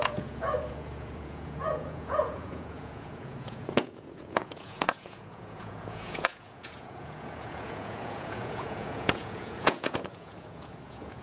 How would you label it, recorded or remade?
remade